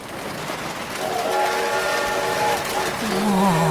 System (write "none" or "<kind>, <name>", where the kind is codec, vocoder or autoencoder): none